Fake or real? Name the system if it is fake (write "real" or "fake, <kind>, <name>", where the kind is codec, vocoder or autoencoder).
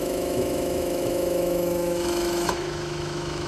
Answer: fake, autoencoder, DAC-VAE